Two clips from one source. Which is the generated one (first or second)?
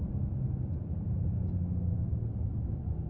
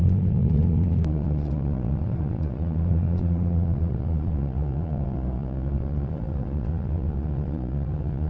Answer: second